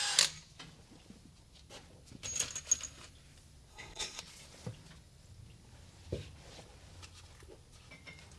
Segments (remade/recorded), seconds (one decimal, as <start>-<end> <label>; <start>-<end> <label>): 0.0-3.7 recorded; 3.7-4.2 remade; 4.2-8.4 recorded